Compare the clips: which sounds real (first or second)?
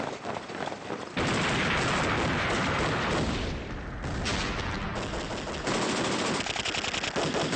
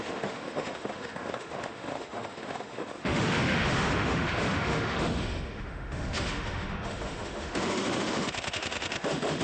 first